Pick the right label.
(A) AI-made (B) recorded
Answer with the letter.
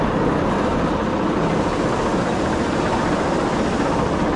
B